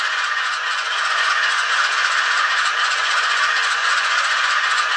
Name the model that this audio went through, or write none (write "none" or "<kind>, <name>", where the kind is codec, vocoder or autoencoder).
vocoder, Vocos